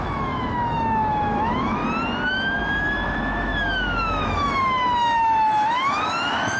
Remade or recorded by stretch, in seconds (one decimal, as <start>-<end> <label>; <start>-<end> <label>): 0.0-1.8 remade; 1.8-2.3 recorded; 2.3-6.6 remade